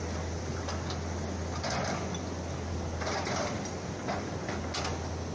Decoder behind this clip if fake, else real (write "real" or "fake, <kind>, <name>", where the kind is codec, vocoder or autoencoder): real